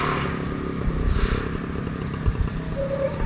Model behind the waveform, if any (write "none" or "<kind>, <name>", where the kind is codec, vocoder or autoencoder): none